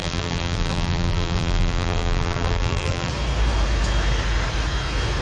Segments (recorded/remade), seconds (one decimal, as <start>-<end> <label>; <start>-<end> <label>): 0.0-3.1 remade; 3.1-5.2 recorded